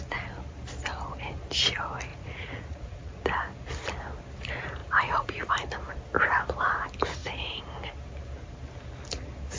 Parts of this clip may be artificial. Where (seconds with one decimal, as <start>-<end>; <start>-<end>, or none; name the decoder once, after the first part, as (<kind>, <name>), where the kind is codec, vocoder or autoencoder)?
2.1-3.2 (vocoder, Vocos); 4.8-5.5